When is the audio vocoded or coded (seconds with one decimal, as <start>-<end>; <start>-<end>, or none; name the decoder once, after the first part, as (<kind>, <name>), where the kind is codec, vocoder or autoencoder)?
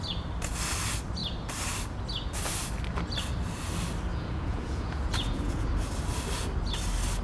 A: 4.1-5.7 (vocoder, Vocos)